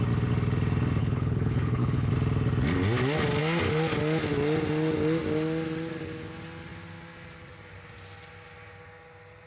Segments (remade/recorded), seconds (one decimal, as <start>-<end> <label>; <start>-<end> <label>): 0.0-1.0 recorded; 1.0-2.1 remade; 2.1-9.5 recorded